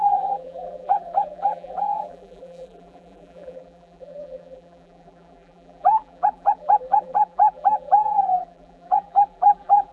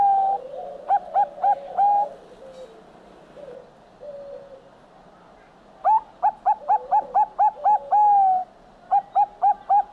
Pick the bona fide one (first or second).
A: second